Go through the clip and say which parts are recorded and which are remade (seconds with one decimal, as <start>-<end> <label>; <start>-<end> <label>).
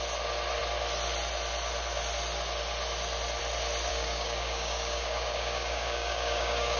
0.0-3.9 recorded; 3.9-6.8 remade